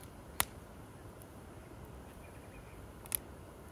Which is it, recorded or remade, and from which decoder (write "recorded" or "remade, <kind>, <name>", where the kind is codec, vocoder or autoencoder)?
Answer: recorded